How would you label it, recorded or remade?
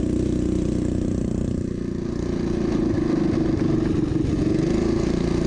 recorded